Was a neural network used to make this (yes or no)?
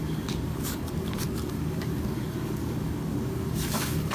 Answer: yes